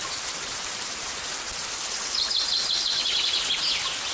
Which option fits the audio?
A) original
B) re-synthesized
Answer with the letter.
A